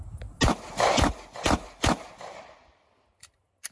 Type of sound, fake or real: real